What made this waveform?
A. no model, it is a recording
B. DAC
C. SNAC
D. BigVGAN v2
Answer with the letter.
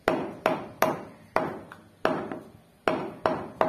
A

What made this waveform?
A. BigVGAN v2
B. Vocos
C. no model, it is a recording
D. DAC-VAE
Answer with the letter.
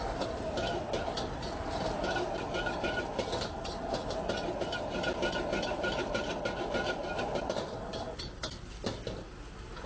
C